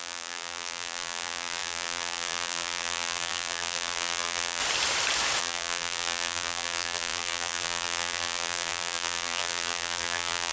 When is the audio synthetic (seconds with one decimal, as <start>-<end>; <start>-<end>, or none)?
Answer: 0.0-4.6; 5.4-10.5